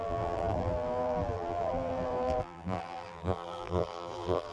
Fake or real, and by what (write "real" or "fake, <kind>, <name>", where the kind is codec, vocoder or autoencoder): fake, vocoder, BigVGAN v2